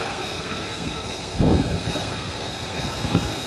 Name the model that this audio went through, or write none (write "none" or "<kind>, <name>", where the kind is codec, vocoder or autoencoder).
codec, SNAC